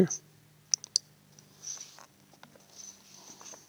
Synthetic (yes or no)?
no